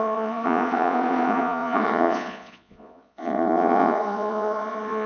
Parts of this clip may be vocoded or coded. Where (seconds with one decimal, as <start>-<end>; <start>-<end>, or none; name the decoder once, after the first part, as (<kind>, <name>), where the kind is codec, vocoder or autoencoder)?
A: 0.0-5.1 (vocoder, Vocos)